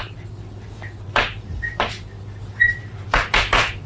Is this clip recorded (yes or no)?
no